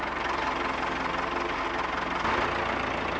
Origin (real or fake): real